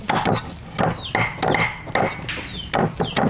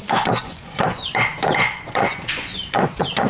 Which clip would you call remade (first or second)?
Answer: second